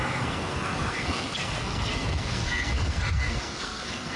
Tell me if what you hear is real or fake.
fake